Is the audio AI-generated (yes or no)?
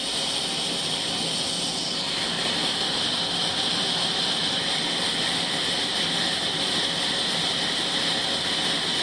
no